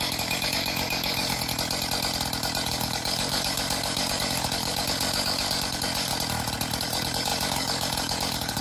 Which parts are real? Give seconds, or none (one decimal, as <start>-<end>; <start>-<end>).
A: 1.5-2.7; 6.1-6.8